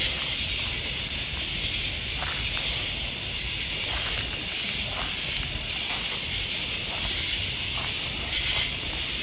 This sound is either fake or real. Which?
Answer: real